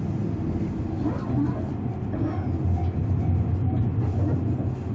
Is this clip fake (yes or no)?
no